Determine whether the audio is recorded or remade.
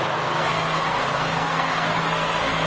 remade